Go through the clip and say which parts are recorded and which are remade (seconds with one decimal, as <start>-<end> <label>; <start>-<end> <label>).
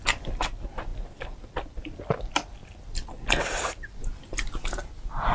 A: 0.0-5.3 recorded